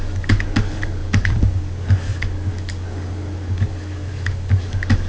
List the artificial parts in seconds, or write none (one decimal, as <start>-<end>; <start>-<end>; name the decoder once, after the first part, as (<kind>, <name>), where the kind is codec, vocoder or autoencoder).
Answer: 0.0-5.1 (codec, DAC)